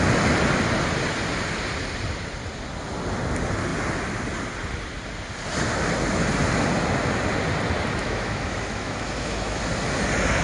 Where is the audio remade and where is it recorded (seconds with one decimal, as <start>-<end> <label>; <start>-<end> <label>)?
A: 0.0-8.0 recorded; 8.0-9.6 remade; 9.6-10.4 recorded